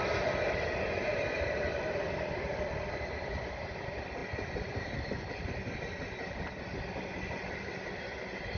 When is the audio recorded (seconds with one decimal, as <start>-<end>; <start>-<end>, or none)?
0.0-8.6